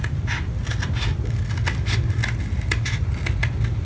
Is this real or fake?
real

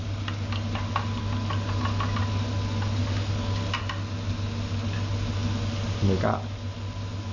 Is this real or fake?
real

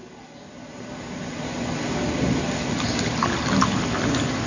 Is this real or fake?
real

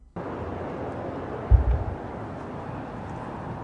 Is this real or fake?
real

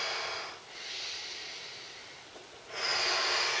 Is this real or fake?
real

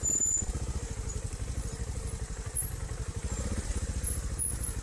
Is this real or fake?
real